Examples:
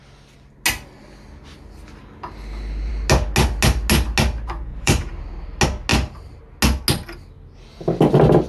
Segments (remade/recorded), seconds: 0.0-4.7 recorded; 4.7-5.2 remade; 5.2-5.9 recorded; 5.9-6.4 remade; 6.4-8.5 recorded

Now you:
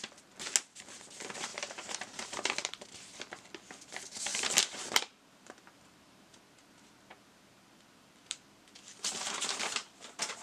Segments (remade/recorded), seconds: 0.0-1.5 recorded; 1.5-3.2 remade; 3.2-4.3 recorded; 4.3-6.4 remade; 6.4-7.1 recorded; 7.1-10.4 remade